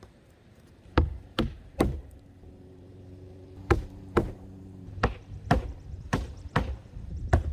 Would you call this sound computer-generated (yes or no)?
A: yes